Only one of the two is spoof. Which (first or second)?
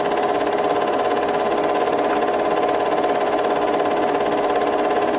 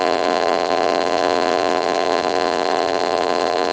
second